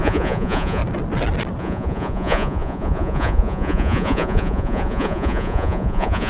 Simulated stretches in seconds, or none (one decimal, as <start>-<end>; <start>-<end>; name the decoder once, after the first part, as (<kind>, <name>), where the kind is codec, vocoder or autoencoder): 0.0-0.8 (vocoder, Vocos); 1.6-6.3